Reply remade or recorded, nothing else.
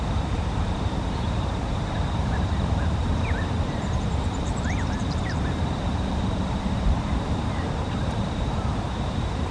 remade